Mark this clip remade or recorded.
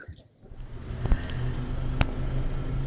recorded